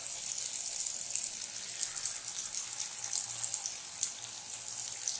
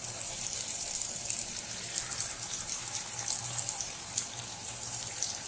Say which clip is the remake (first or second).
second